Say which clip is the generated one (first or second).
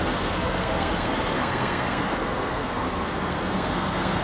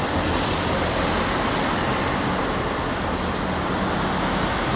first